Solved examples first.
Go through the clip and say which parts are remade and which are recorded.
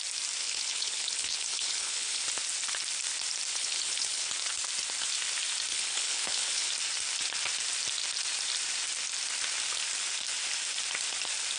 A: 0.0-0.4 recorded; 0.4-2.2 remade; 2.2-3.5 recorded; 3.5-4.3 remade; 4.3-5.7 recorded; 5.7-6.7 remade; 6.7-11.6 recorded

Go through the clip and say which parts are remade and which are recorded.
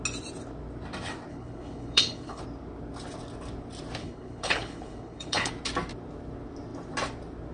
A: 0.0-1.3 recorded; 1.3-2.4 remade; 2.4-4.0 recorded; 4.0-5.5 remade; 5.5-7.5 recorded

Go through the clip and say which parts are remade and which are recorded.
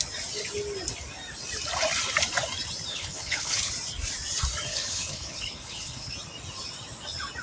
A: 0.0-2.9 recorded; 2.9-3.7 remade; 3.7-4.7 recorded; 4.7-6.1 remade; 6.1-7.4 recorded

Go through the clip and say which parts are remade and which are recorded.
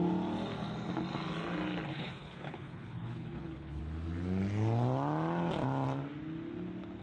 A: 0.0-1.9 recorded; 1.9-3.8 remade; 3.8-7.0 recorded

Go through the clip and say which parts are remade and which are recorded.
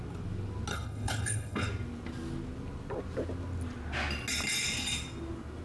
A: 0.0-0.7 recorded; 0.7-1.7 remade; 1.7-5.6 recorded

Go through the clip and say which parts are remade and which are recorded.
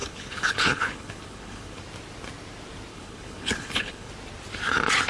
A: 0.0-1.8 remade; 1.8-2.9 recorded; 2.9-4.1 remade; 4.1-5.1 recorded